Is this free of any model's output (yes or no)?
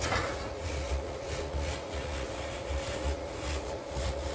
no